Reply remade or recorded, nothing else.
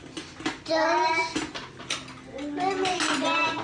recorded